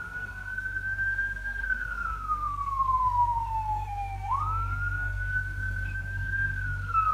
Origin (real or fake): fake